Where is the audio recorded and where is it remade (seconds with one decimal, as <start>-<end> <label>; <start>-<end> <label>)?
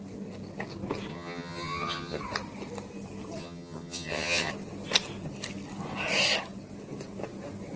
0.0-1.1 recorded; 1.1-2.2 remade; 2.2-3.4 recorded; 3.4-4.5 remade; 4.5-7.8 recorded